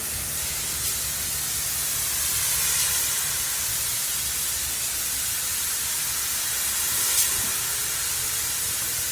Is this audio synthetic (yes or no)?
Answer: no